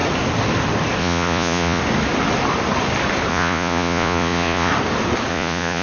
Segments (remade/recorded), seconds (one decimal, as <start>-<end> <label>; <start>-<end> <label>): 0.0-1.0 recorded; 1.0-1.8 remade; 1.8-3.3 recorded; 3.3-4.7 remade; 4.7-5.3 recorded; 5.3-5.8 remade